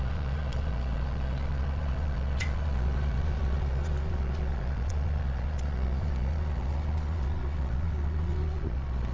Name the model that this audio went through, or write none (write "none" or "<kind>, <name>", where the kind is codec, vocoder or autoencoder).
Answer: vocoder, Vocos